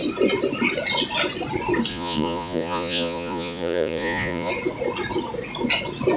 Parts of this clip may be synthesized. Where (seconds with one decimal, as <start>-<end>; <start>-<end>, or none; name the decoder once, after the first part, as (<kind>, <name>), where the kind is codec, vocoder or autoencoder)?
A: 1.9-4.5 (vocoder, Vocos)